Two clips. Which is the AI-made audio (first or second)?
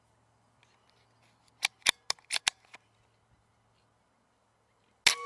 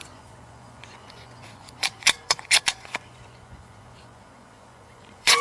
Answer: second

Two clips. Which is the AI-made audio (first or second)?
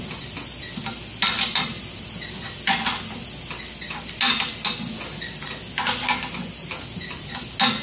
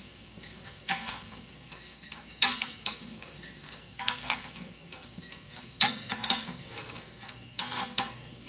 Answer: second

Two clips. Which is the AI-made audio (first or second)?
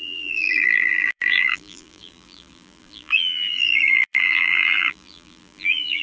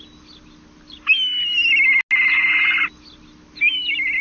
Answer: first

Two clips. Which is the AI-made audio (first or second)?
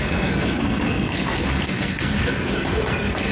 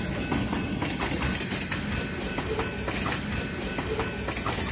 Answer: first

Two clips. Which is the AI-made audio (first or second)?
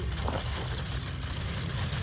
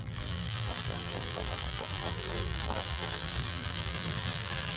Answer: second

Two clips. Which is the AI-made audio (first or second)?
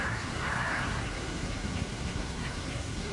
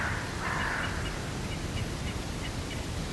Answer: first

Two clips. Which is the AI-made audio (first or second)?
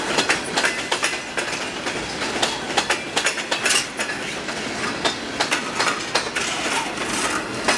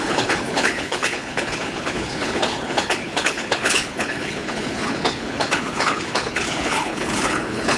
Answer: second